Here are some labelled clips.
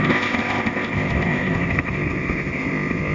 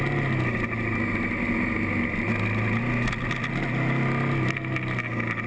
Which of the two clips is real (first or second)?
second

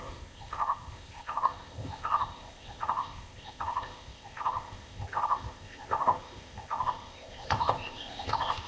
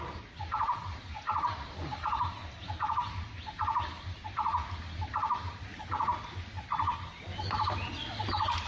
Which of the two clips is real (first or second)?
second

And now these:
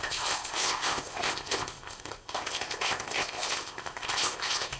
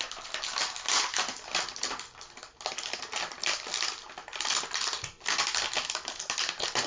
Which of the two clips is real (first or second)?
second